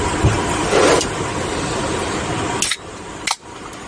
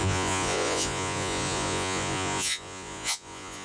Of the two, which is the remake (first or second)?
second